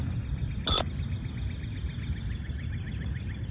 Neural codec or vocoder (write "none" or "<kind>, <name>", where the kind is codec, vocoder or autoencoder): none